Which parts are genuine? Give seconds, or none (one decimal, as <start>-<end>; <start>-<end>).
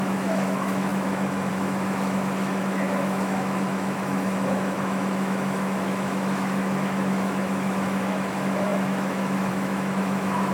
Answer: none